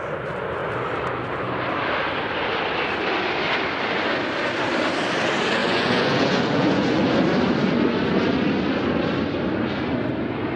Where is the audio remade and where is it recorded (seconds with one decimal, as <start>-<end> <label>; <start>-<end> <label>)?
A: 0.0-5.6 recorded; 5.6-7.1 remade; 7.1-10.6 recorded